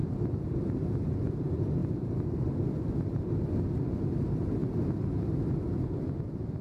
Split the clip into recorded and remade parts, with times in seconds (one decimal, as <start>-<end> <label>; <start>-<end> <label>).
0.0-6.6 recorded